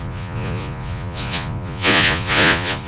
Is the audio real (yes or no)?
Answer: no